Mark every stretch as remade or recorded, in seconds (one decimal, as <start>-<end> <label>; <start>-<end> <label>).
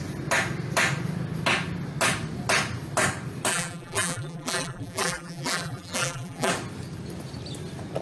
0.0-3.5 recorded; 3.5-6.5 remade; 6.5-8.0 recorded